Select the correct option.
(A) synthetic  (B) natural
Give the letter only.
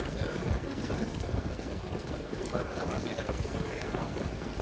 A